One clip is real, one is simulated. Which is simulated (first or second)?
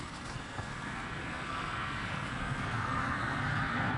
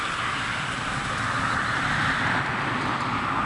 first